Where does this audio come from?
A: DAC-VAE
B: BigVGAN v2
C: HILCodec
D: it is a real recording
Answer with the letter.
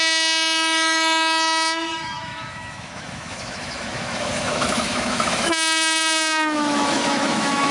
A